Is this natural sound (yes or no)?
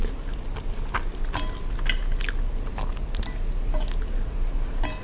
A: yes